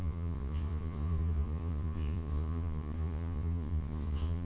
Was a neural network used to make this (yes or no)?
yes